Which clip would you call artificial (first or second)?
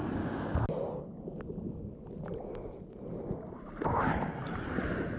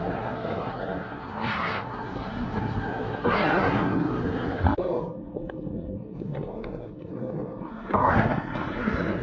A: second